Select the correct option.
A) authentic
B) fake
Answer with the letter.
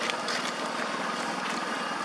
B